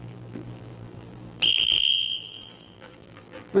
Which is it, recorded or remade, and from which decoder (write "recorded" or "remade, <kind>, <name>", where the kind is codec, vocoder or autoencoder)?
remade, vocoder, BigVGAN v2